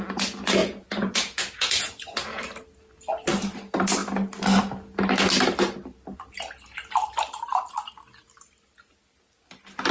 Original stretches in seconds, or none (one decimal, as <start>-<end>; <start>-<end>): 0.0-0.6; 2.4-9.9